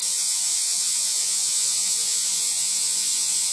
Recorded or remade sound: remade